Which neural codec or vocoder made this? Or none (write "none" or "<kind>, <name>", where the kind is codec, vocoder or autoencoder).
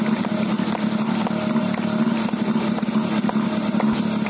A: none